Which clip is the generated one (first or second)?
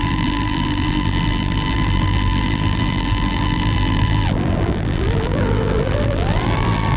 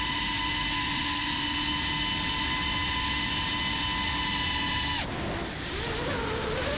first